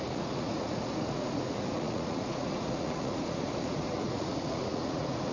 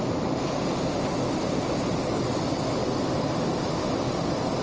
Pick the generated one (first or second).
first